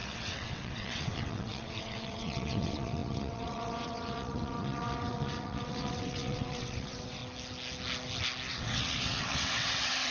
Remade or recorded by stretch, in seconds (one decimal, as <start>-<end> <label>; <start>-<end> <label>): 0.0-7.2 remade; 7.2-8.5 recorded; 8.5-10.1 remade